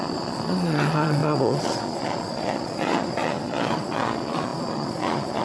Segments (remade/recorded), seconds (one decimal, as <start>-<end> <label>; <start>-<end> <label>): 0.0-5.4 remade